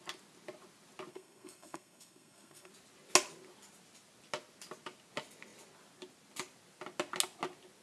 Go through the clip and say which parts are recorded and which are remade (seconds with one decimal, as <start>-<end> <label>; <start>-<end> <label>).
0.0-1.1 recorded; 1.1-2.7 remade; 2.7-7.8 recorded